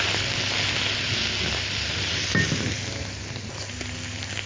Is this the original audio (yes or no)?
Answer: yes